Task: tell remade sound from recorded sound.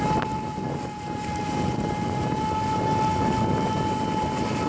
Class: recorded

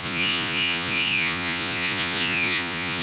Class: remade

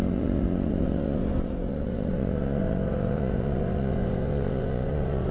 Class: remade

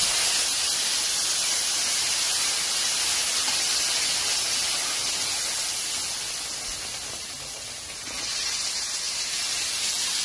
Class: recorded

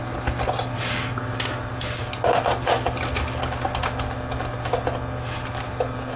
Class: recorded